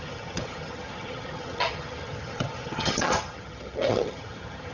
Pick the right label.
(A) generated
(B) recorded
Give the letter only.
A